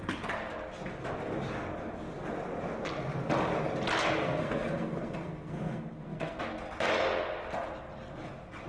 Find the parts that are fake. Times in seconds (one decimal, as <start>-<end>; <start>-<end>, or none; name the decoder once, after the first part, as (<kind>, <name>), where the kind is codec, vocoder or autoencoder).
4.2-6.4 (codec, SNAC)